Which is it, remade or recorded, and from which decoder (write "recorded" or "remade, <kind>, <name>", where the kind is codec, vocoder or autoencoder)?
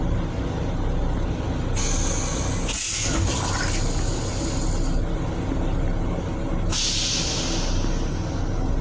recorded